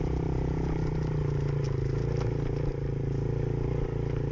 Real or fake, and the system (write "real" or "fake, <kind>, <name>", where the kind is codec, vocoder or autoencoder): real